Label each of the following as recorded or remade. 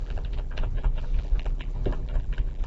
remade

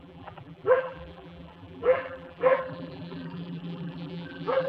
remade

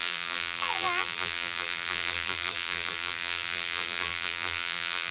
remade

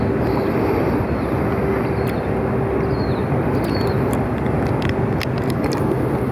recorded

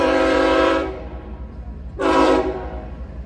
remade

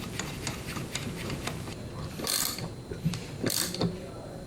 remade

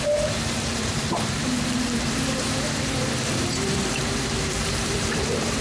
remade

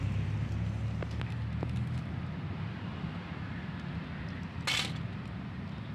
recorded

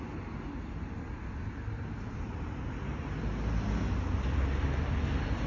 recorded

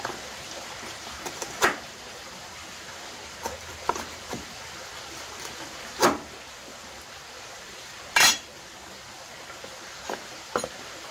remade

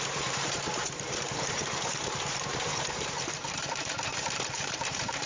remade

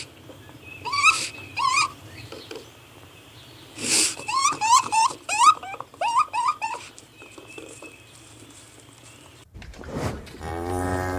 remade